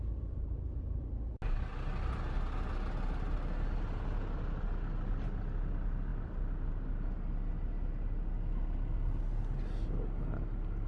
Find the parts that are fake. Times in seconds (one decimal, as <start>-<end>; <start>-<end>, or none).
none